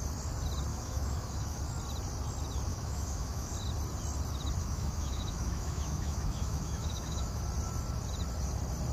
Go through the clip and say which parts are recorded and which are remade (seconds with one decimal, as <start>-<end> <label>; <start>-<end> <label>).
0.0-0.7 recorded; 0.7-1.6 remade; 1.6-2.7 recorded; 2.7-3.5 remade; 3.5-4.6 recorded; 4.6-7.4 remade; 7.4-8.9 recorded